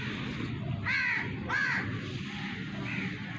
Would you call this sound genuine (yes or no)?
yes